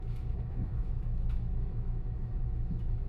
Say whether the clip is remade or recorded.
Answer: remade